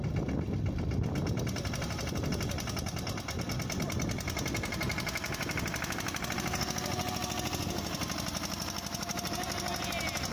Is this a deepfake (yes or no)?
no